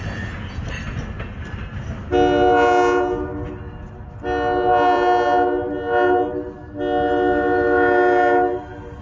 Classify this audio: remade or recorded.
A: recorded